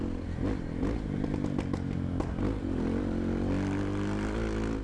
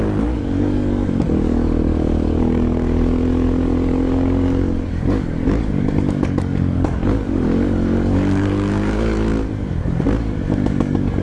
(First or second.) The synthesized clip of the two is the second